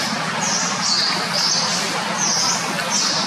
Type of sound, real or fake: real